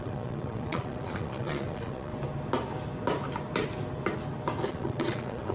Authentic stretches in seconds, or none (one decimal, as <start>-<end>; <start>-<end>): 2.1-4.7